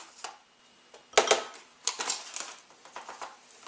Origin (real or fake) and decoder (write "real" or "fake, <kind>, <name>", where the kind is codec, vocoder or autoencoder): real